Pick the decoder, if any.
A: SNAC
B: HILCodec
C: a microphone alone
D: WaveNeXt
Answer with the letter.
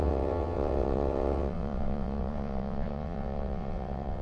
D